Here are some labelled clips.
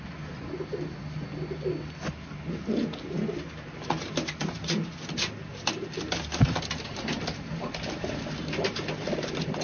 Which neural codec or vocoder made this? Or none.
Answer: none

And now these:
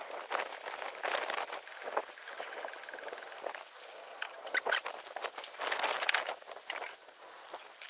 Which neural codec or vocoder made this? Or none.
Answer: none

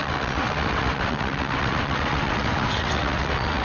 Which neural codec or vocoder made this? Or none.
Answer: vocoder, WaveNeXt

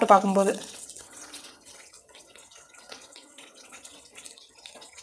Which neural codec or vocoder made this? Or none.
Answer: vocoder, WaveNeXt